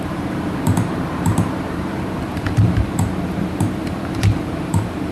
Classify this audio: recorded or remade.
remade